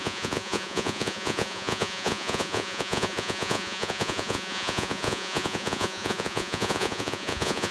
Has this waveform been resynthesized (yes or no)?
yes